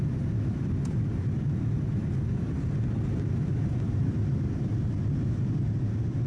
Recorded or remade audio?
recorded